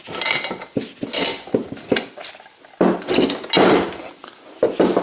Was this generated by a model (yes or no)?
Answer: no